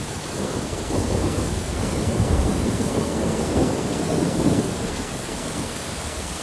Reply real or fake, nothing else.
fake